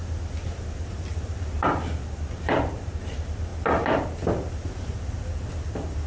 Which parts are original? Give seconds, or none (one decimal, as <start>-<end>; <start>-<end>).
0.0-6.1